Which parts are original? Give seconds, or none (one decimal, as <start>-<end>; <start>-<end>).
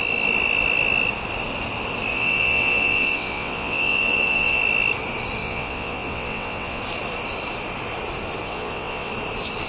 0.0-2.1; 4.6-5.4; 6.8-8.4; 9.1-9.7